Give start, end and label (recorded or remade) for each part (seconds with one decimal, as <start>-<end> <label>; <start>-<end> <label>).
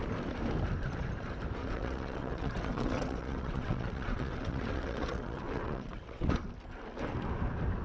0.0-1.6 recorded; 1.6-6.3 remade; 6.3-7.8 recorded